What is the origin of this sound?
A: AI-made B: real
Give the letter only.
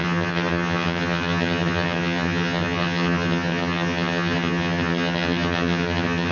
A